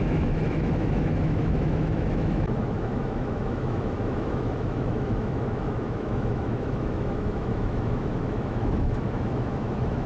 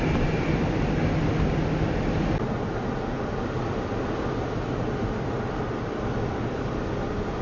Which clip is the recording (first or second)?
second